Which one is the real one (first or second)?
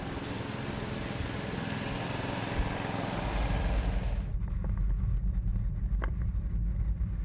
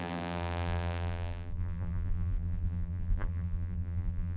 first